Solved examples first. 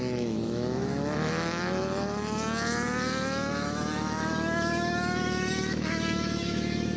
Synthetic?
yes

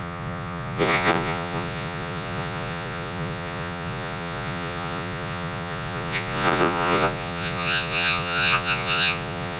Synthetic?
yes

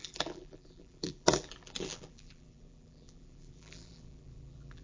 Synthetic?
yes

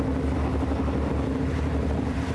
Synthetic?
no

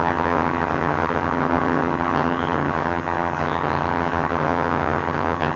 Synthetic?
yes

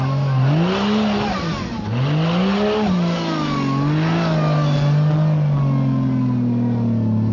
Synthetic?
no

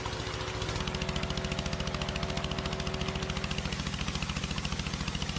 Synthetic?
no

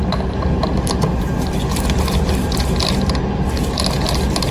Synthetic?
no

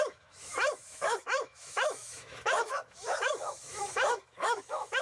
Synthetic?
yes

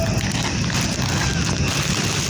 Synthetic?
no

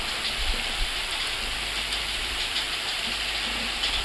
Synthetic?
no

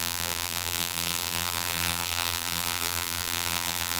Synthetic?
yes